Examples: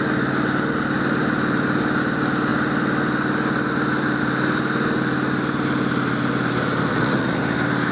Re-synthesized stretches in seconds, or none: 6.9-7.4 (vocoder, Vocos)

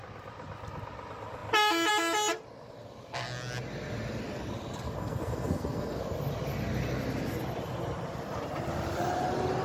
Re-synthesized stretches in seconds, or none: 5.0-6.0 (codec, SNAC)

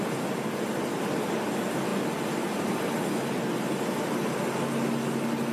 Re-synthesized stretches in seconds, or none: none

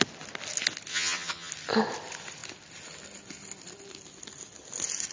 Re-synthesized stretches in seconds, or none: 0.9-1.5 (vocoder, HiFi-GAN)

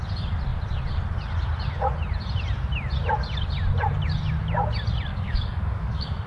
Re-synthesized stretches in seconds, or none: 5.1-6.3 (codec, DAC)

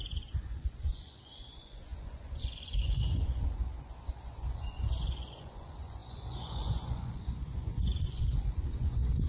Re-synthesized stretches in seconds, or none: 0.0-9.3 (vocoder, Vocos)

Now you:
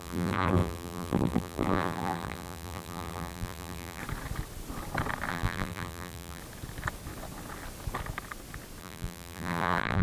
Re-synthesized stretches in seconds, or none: 0.0-4.0 (vocoder, BigVGAN v2); 5.3-6.4; 8.8-10.0

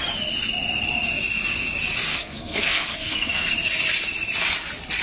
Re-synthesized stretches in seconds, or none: 2.1-3.5 (codec, SNAC)